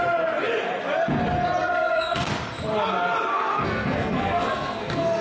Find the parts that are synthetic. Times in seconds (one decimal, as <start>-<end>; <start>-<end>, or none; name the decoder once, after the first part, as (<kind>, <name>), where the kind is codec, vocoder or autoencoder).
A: 1.6-2.3 (codec, SNAC); 3.3-5.2